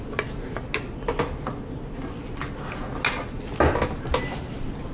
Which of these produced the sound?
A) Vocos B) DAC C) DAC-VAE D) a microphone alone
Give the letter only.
D